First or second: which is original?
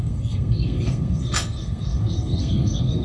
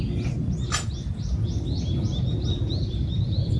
second